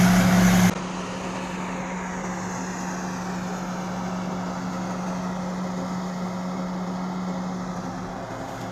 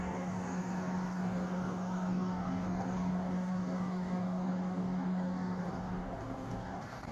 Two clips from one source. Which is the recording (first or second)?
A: first